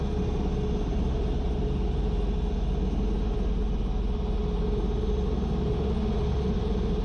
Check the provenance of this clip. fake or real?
real